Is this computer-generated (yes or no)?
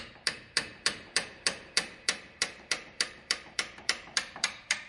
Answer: yes